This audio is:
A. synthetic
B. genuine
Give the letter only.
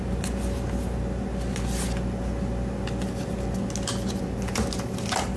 B